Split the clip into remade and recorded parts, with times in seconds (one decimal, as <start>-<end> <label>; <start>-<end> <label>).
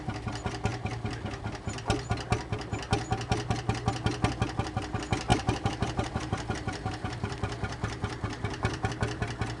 0.0-5.3 recorded; 5.3-8.9 remade; 8.9-9.6 recorded